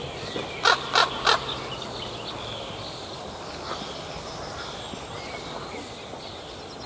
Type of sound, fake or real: real